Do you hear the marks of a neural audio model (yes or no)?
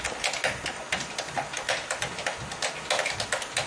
no